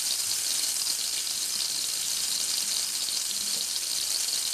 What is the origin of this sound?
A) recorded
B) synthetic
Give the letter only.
A